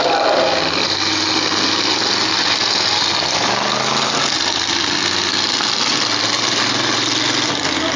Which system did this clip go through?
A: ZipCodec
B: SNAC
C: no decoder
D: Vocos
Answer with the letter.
C